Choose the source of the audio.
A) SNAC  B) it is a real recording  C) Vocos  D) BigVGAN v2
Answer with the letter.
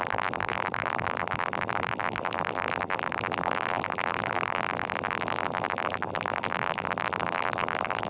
D